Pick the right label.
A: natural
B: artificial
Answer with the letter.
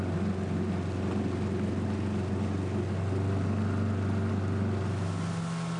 A